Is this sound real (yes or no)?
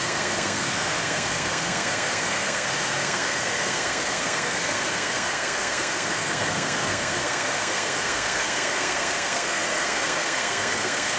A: no